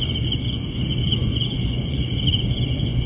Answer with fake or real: fake